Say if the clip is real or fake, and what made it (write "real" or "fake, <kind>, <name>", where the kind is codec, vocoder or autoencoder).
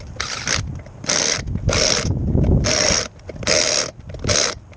real